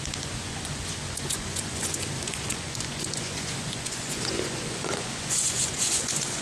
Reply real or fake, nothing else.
fake